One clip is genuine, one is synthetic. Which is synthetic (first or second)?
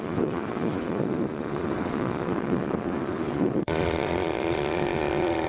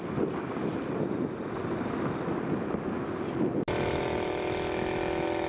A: first